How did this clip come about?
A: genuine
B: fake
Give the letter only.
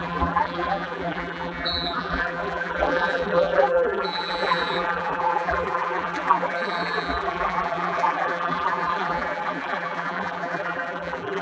B